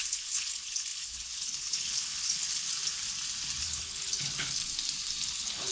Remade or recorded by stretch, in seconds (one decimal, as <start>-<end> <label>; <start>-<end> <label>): 0.0-2.7 remade; 2.7-3.6 recorded; 3.6-4.6 remade; 4.6-5.3 recorded; 5.3-5.7 remade